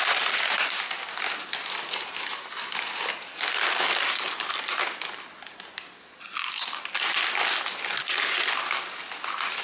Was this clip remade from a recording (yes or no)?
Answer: no